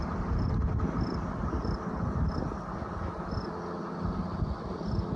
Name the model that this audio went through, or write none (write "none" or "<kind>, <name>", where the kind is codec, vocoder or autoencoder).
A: none